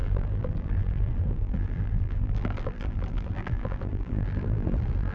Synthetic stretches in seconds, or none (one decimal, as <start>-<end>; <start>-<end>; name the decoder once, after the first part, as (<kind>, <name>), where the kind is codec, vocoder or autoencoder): 0.0-5.1 (vocoder, BigVGAN v2)